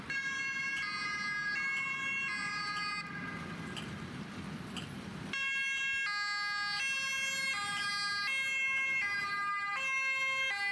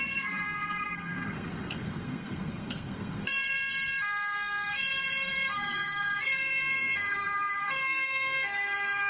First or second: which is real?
first